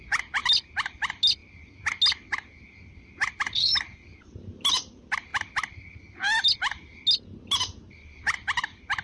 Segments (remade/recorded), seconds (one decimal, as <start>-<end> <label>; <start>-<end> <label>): 0.0-9.0 recorded